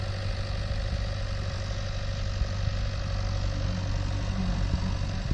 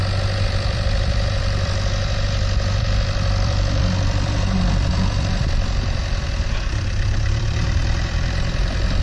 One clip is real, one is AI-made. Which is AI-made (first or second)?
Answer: second